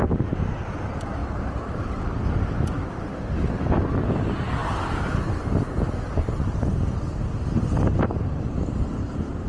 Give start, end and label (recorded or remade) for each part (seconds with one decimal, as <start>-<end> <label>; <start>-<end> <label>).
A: 0.0-1.2 recorded; 1.2-2.0 remade; 2.0-4.6 recorded; 4.6-9.5 remade